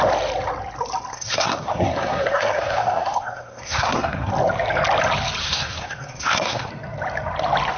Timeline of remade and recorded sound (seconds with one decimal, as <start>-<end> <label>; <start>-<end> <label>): 0.0-1.1 recorded; 1.1-4.3 remade; 4.3-5.4 recorded; 5.4-6.7 remade; 6.7-7.8 recorded